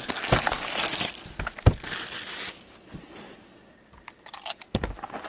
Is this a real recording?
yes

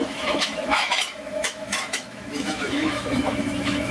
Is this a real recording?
no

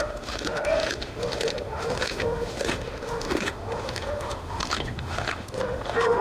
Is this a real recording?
no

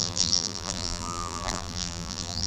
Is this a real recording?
no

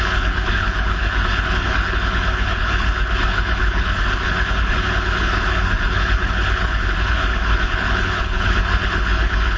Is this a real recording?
no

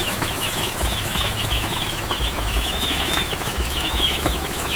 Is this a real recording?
no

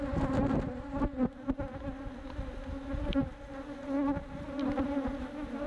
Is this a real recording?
yes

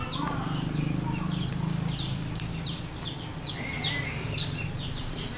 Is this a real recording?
yes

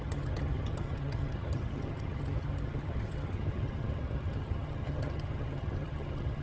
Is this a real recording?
no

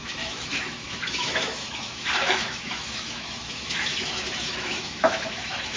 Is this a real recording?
no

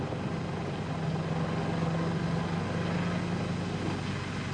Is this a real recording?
yes